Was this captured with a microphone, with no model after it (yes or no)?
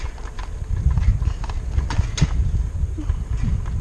yes